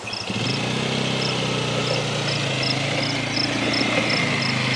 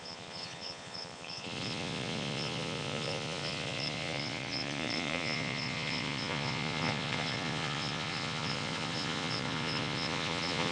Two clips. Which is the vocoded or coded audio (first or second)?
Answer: second